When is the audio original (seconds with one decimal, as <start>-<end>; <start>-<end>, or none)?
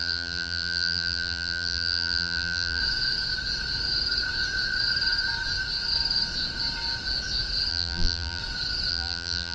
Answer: 2.8-7.7; 8.4-8.9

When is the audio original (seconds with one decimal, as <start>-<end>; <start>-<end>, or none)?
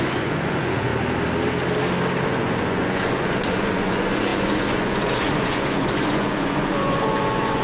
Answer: 0.9-2.3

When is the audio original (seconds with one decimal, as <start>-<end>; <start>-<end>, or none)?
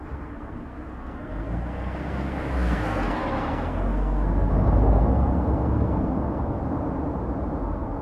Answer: 6.6-7.6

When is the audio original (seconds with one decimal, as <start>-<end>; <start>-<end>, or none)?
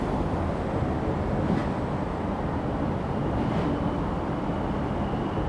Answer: 0.0-5.5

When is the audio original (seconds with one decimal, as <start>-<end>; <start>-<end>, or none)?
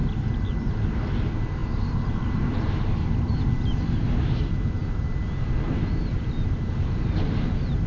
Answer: 0.0-7.9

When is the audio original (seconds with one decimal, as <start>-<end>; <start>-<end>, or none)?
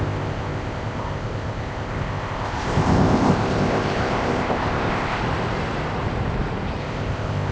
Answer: 5.2-6.8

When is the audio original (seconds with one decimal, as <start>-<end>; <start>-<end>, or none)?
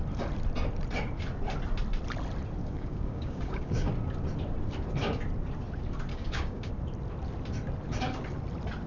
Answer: 0.0-2.6; 3.9-6.1; 6.7-8.9